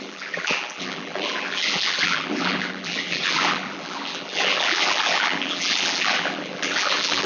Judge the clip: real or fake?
fake